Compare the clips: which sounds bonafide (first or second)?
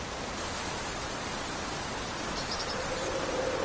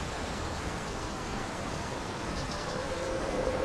first